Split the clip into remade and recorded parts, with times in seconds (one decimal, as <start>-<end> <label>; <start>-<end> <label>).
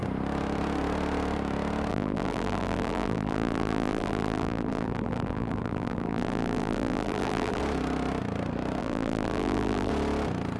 0.0-1.9 recorded; 1.9-7.6 remade; 7.6-8.8 recorded; 8.8-9.9 remade; 9.9-10.6 recorded